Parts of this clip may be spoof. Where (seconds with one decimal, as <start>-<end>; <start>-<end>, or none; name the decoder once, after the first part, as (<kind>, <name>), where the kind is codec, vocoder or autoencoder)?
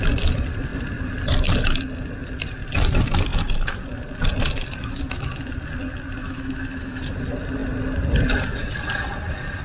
6.2-7.0 (autoencoder, DAC-VAE)